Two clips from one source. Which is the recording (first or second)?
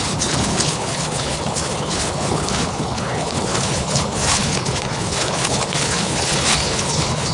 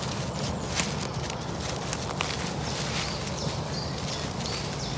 second